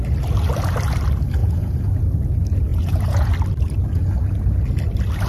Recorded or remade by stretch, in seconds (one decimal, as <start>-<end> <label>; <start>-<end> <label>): 0.0-1.4 recorded; 1.4-2.0 remade; 2.0-2.7 recorded; 2.7-3.3 remade; 3.3-5.3 recorded